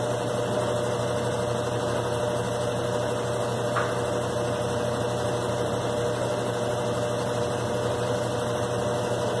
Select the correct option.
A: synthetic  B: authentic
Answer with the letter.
B